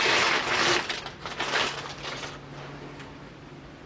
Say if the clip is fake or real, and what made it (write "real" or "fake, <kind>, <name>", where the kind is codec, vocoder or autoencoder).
real